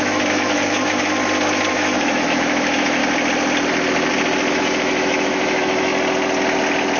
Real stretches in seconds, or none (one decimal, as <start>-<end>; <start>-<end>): 1.2-1.7; 3.0-4.5; 5.9-7.0